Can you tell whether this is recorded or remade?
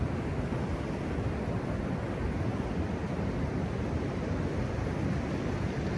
recorded